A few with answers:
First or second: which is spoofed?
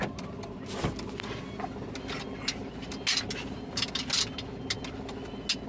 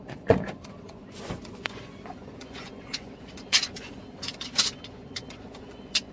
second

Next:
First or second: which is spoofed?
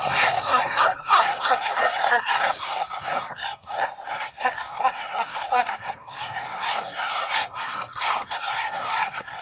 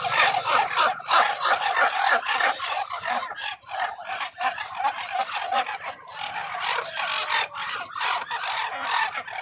first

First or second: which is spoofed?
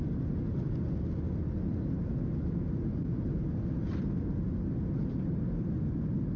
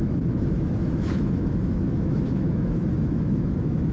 second